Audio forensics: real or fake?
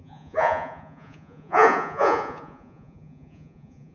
fake